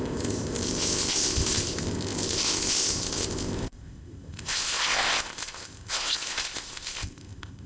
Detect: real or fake fake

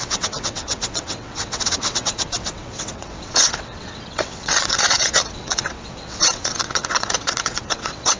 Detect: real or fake fake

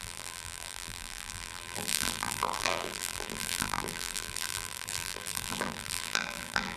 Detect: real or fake fake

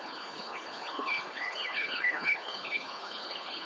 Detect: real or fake fake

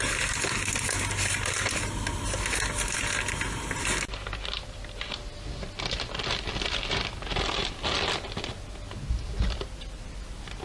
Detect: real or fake real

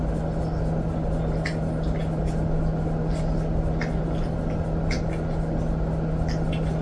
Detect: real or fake real